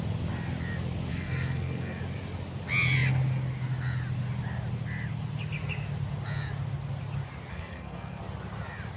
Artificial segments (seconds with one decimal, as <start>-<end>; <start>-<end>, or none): 1.1-2.0; 7.5-8.2